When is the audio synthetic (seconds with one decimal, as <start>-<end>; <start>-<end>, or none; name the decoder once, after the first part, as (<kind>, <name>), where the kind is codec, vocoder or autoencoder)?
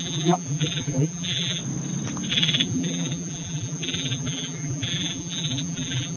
0.0-1.6 (vocoder, BigVGAN v2); 2.3-6.2